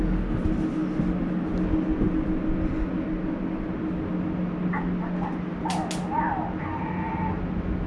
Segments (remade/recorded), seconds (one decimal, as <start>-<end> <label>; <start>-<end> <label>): 0.0-7.9 recorded